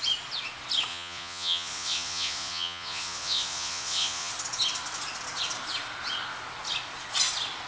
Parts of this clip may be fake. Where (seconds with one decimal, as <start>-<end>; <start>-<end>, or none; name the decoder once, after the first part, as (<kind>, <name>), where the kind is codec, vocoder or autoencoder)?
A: 0.9-4.3 (vocoder, Vocos)